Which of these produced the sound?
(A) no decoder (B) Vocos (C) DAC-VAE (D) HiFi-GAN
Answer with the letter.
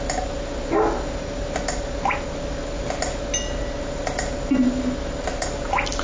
A